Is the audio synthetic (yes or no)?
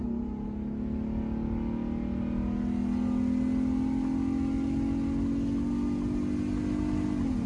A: no